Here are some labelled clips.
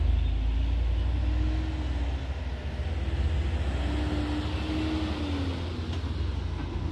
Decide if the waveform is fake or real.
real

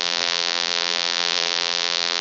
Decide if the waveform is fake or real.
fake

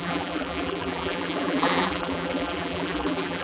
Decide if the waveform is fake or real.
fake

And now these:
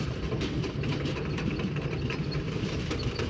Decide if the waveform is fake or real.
fake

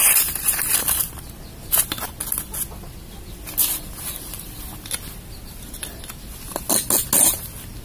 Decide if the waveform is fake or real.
real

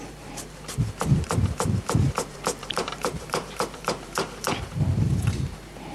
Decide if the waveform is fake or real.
fake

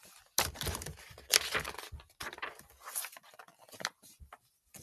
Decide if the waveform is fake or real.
real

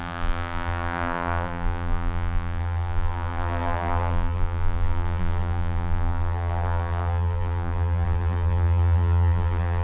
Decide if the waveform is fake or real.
fake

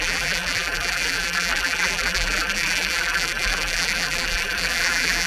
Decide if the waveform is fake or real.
fake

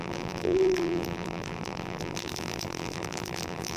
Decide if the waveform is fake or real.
fake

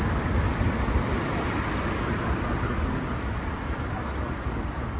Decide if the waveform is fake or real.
fake